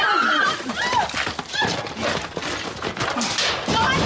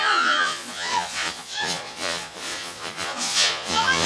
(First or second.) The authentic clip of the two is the first